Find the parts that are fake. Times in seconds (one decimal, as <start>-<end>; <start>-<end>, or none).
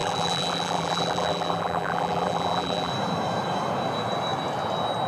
0.0-2.9